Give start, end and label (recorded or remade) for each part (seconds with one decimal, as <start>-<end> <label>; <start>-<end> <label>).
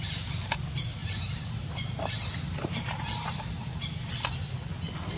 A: 0.0-1.0 recorded; 1.0-4.1 remade; 4.1-5.2 recorded